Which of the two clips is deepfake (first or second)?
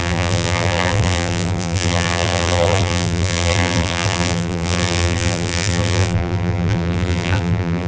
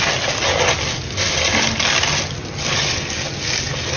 first